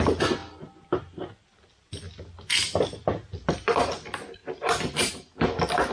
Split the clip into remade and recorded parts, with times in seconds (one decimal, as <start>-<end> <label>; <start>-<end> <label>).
0.0-5.9 recorded